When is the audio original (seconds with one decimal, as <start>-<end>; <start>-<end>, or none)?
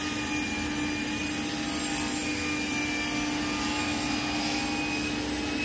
0.0-5.6